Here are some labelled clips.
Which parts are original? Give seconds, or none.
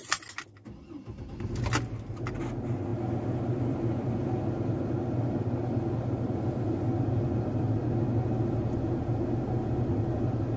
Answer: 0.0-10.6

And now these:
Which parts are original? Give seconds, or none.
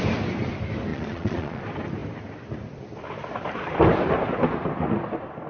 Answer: 0.0-0.9; 1.6-5.5